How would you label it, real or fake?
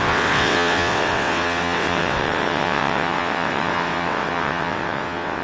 fake